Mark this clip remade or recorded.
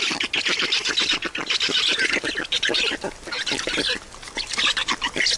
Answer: recorded